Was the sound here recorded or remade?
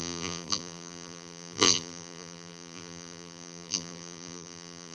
remade